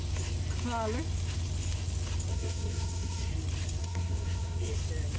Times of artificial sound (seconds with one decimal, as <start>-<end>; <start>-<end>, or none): 2.3-3.3; 3.8-4.7